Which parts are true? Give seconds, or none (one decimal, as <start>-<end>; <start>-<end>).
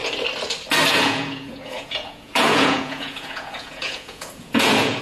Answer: 0.0-1.0